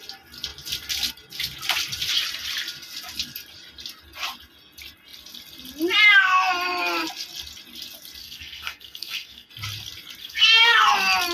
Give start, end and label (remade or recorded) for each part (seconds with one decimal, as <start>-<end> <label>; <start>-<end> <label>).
0.0-8.2 recorded; 8.2-9.5 remade; 9.5-10.2 recorded; 10.2-10.8 remade; 10.8-11.3 recorded

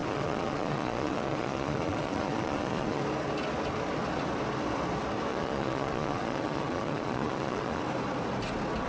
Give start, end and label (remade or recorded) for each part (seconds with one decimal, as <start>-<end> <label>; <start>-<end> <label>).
0.0-3.0 remade; 3.0-5.3 recorded; 5.3-7.8 remade; 7.8-8.9 recorded

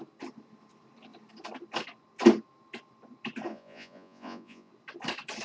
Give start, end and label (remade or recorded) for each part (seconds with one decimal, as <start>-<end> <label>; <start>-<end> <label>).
0.0-3.5 recorded; 3.5-4.7 remade; 4.7-5.4 recorded

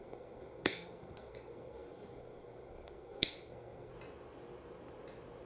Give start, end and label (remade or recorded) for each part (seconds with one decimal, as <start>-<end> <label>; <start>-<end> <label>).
0.0-3.9 remade; 3.9-5.5 recorded

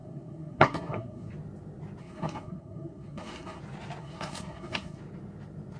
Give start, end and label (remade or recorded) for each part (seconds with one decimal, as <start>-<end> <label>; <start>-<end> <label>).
0.0-1.3 remade; 1.3-2.0 recorded; 2.0-3.6 remade; 3.6-4.0 recorded; 4.0-5.0 remade; 5.0-5.8 recorded

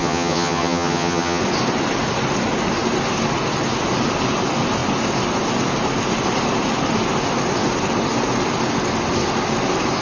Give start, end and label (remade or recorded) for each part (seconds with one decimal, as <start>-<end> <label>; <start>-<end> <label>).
0.0-1.4 remade; 1.4-10.0 recorded

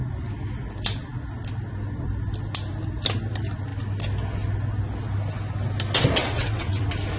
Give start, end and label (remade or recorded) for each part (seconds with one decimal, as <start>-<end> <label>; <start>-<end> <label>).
0.0-6.2 recorded; 6.2-6.8 remade; 6.8-7.2 recorded

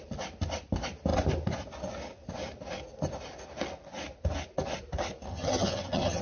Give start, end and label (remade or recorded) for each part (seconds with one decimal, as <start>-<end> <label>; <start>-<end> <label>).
0.0-5.3 recorded; 5.3-6.2 remade